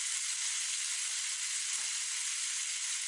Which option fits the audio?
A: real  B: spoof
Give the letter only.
A